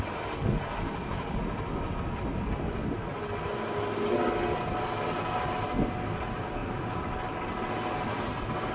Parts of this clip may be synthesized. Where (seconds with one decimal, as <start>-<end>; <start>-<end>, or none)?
none